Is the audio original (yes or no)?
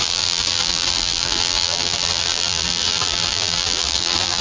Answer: no